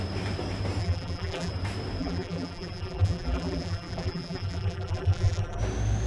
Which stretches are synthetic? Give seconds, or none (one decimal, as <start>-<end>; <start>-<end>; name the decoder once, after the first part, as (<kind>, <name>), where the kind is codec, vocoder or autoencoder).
0.8-1.5 (vocoder, BigVGAN v2); 2.0-5.6